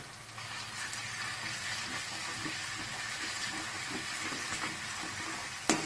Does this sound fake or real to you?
real